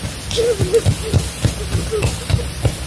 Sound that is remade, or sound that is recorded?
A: recorded